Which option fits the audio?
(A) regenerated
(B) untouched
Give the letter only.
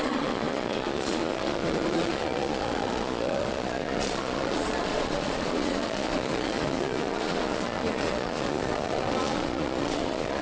A